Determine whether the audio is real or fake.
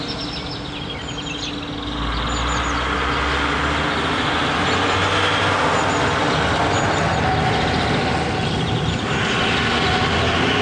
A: real